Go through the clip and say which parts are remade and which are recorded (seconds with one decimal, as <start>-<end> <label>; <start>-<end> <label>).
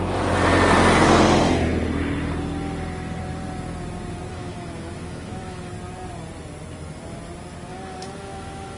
0.0-4.3 recorded; 4.3-5.7 remade; 5.7-7.7 recorded; 7.7-8.8 remade